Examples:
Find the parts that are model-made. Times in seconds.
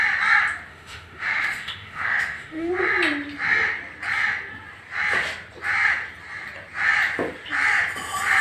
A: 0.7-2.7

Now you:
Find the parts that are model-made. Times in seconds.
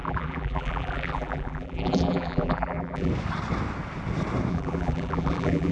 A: 0.0-3.1; 4.5-5.7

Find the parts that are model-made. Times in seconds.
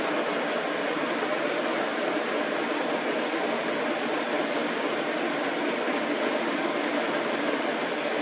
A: none